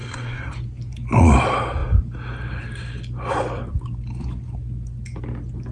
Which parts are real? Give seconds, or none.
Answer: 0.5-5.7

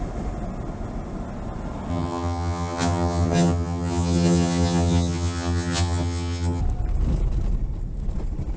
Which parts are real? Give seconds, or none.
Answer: 0.0-1.9; 6.6-8.6

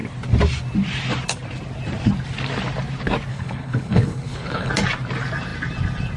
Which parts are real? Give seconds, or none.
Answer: 0.0-3.3; 4.7-6.2

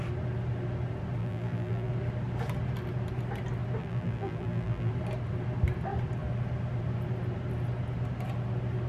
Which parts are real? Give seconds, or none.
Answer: 0.0-1.2; 1.9-3.8; 4.9-8.9

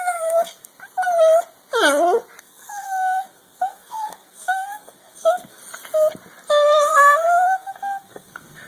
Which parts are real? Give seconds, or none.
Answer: 0.7-2.4; 5.6-6.5

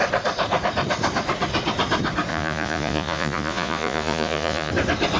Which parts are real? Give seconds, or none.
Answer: 0.0-2.3; 4.7-5.2

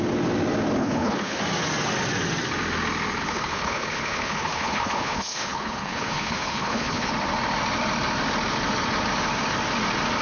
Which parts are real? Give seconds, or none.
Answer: 0.0-0.8; 1.4-3.2; 7.1-10.2

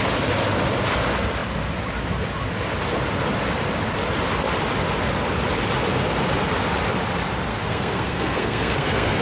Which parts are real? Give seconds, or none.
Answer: 0.0-7.5